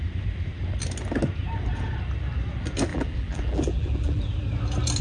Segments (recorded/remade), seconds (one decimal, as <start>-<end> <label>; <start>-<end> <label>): 0.0-2.9 recorded; 2.9-4.2 remade; 4.2-5.0 recorded